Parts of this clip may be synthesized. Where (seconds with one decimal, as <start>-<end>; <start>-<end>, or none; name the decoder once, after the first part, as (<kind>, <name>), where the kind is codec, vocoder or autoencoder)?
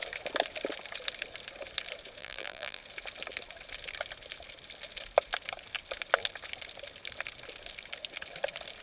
2.2-2.8 (vocoder, BigVGAN v2)